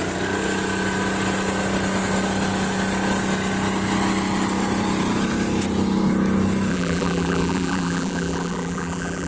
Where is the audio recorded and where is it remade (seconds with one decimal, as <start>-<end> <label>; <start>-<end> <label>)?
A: 0.0-6.7 recorded; 6.7-9.3 remade